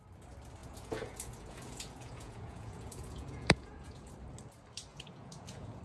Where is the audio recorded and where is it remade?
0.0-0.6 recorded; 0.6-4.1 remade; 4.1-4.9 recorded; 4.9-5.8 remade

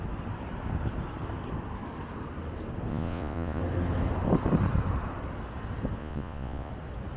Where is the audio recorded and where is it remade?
0.0-2.9 recorded; 2.9-3.6 remade; 3.6-6.0 recorded; 6.0-6.7 remade; 6.7-7.2 recorded